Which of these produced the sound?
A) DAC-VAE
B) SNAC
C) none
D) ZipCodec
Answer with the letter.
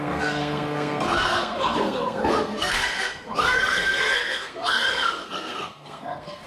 B